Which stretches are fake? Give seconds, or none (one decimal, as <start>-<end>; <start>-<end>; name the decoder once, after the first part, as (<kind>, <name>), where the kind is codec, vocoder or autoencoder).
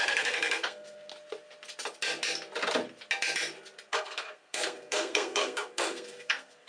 0.0-1.1 (codec, SNAC); 3.9-6.7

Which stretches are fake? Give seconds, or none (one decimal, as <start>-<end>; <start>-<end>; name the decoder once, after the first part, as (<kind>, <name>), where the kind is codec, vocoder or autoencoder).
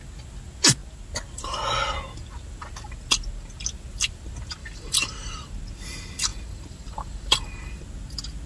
4.6-5.5 (vocoder, BigVGAN v2); 6.3-7.8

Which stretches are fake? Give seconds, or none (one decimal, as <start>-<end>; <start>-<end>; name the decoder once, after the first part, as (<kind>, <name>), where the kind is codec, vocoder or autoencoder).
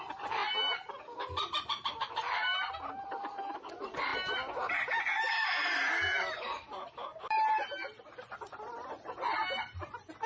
0.0-0.4 (vocoder, BigVGAN v2); 1.0-2.5; 3.0-4.1; 6.3-10.3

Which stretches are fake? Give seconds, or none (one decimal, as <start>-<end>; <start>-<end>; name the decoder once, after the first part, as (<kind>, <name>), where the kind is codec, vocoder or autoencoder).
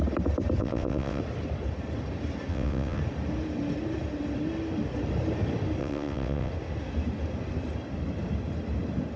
0.6-1.2 (vocoder, WaveNeXt); 2.5-3.0; 5.8-6.5